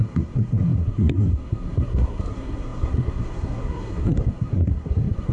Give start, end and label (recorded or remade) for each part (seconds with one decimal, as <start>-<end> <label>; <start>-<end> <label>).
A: 0.0-5.3 remade